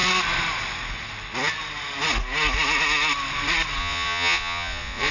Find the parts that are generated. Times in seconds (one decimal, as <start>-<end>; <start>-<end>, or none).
3.8-5.1